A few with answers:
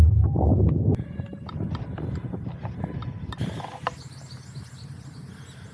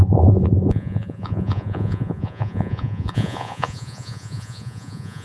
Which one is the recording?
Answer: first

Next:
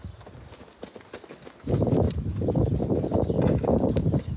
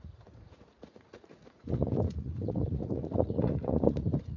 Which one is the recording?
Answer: first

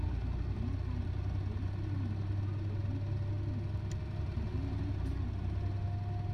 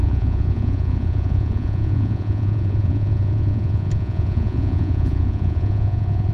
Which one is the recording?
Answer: first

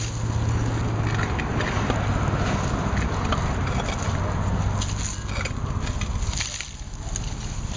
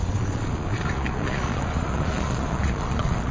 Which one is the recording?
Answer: first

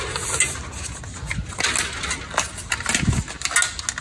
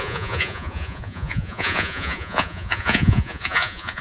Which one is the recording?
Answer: first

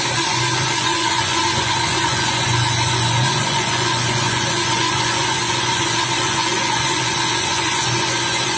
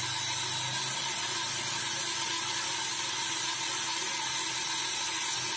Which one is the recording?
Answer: second